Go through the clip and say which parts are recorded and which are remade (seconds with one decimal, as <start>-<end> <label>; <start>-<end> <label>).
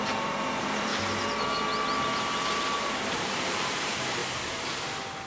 0.0-0.9 remade; 0.9-3.1 recorded; 3.1-4.2 remade; 4.2-5.3 recorded